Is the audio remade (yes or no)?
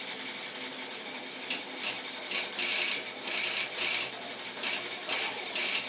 no